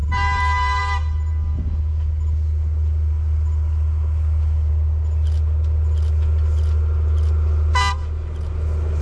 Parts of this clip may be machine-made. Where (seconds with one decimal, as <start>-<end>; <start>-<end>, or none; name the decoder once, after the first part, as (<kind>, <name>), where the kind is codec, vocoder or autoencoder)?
0.0-0.8 (vocoder, BigVGAN v2)